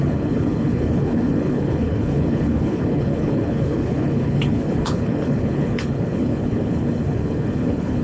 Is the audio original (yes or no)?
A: no